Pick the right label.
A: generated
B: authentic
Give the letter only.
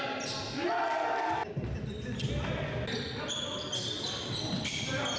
B